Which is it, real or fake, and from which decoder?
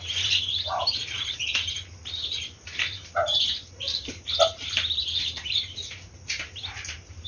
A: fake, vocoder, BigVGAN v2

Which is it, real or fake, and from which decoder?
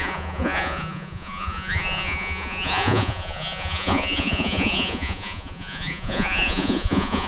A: fake, vocoder, Vocos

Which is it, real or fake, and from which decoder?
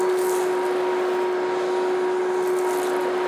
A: real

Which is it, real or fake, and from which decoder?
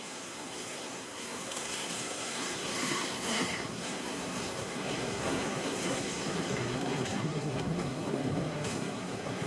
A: fake, codec, SNAC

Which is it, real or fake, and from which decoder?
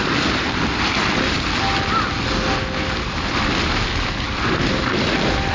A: real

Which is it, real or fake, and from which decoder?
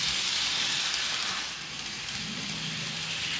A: real